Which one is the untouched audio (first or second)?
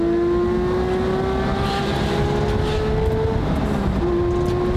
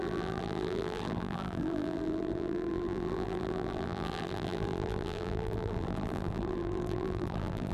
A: first